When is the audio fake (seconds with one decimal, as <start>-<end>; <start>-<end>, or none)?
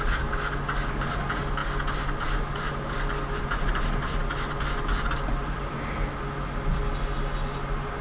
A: none